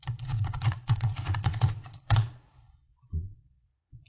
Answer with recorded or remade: remade